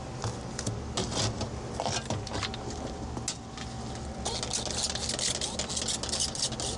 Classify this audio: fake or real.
real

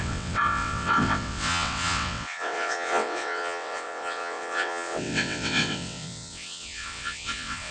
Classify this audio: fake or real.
fake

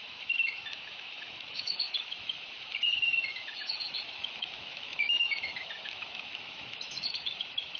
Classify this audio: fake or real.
fake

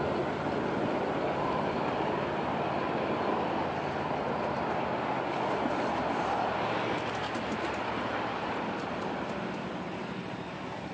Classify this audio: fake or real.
real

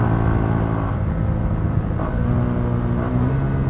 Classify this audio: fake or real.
real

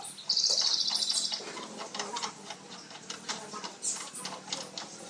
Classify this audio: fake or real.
real